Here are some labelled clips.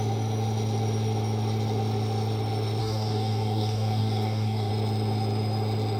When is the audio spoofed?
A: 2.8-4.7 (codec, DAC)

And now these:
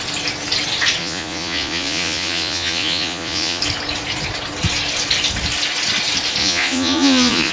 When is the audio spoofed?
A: 1.0-3.6 (vocoder, Vocos); 6.4-7.5